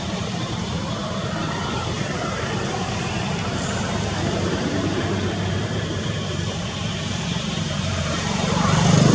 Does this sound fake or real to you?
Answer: fake